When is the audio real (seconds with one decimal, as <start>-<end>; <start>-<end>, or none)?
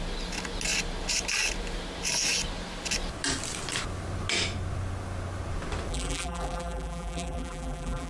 0.0-5.9